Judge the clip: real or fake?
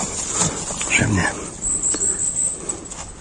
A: real